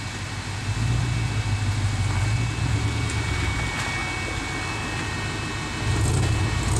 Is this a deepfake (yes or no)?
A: no